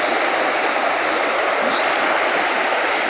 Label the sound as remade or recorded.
recorded